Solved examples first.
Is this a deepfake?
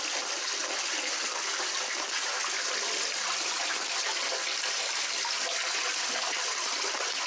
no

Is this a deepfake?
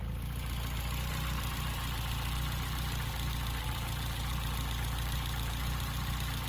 no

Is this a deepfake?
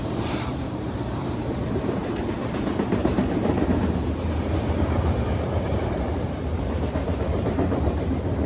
yes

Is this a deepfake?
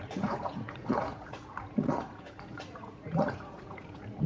yes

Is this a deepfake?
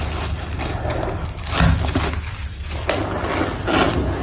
no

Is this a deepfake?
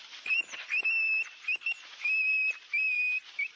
yes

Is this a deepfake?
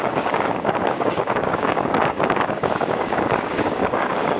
yes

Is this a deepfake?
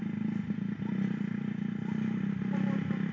no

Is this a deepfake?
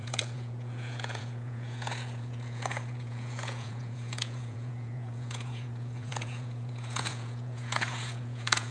yes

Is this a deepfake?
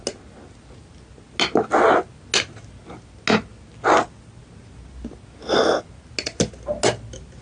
no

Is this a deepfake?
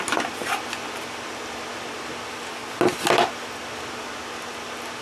no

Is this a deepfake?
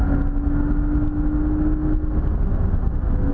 no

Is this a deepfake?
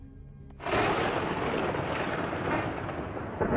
no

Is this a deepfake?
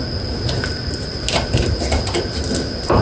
no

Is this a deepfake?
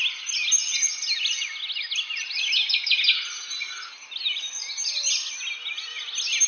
no